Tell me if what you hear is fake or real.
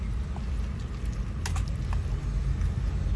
real